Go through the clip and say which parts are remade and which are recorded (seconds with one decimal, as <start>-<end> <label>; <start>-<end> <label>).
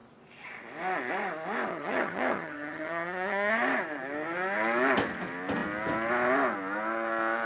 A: 0.0-1.7 recorded; 1.7-3.5 remade; 3.5-7.5 recorded